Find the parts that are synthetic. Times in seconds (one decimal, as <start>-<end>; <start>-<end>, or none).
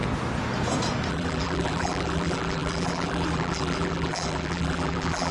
1.1-5.3